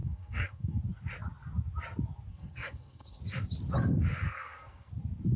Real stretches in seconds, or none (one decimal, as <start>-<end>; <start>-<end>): 0.8-2.3; 3.2-4.2; 4.9-5.4

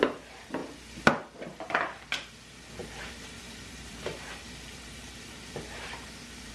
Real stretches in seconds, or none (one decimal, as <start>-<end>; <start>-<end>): 0.0-2.8

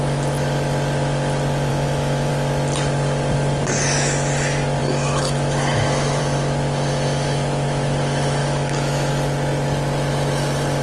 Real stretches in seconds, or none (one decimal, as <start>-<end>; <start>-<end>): 0.0-1.7; 2.3-4.8; 6.2-8.4; 9.1-10.8

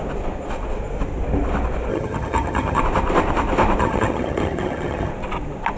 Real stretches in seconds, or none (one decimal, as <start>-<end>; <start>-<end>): 0.0-1.9; 2.8-3.8; 5.1-5.8

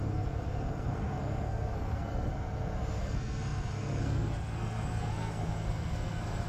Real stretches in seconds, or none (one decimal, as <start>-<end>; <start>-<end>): 2.3-3.0

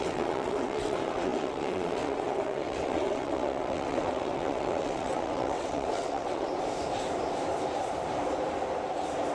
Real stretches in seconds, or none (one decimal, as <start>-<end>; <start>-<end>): 6.5-9.3

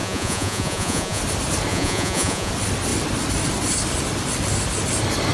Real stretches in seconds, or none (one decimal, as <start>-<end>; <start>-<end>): 1.2-1.7; 2.5-5.3

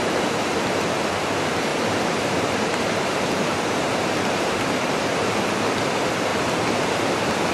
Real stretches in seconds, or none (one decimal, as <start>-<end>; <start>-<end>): 0.0-1.7; 5.4-7.5